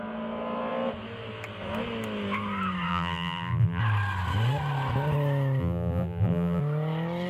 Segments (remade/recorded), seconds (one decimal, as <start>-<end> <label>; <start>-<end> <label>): 0.0-2.9 recorded; 2.9-3.8 remade; 3.8-5.6 recorded; 5.6-6.6 remade; 6.6-7.3 recorded